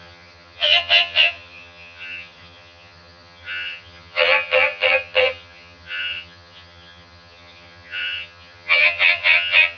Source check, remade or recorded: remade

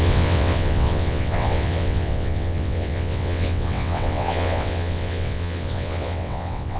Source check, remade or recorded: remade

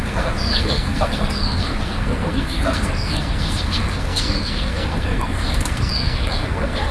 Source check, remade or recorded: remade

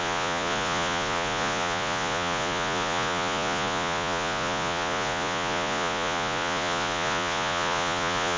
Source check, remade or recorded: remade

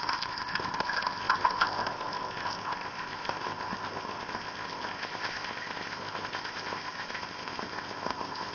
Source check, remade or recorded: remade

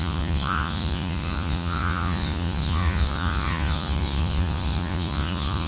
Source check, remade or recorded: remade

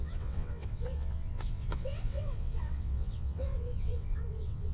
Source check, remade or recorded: remade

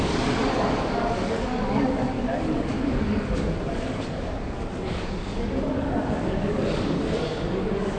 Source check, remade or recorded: remade